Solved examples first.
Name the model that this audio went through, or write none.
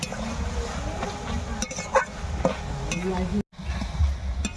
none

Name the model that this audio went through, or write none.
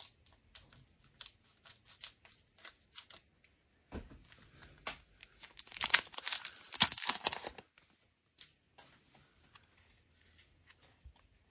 none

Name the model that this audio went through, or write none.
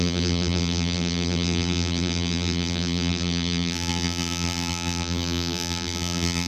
vocoder, BigVGAN v2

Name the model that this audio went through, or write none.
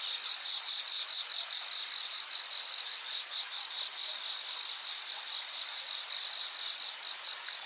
none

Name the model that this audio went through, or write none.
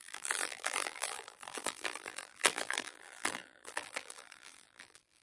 vocoder, BigVGAN v2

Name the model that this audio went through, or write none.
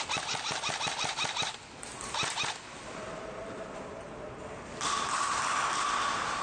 none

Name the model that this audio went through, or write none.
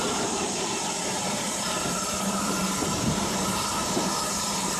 vocoder, BigVGAN v2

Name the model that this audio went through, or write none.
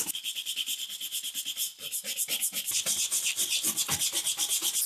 none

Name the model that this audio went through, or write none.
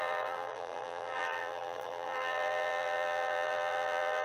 vocoder, BigVGAN v2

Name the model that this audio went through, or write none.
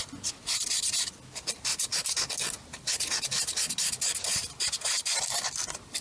none